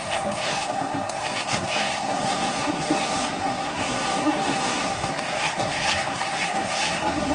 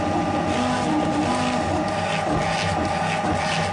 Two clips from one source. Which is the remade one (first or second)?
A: first